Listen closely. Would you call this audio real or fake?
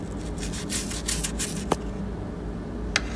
real